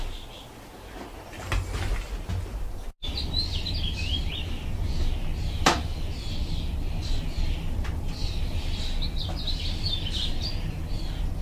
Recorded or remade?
recorded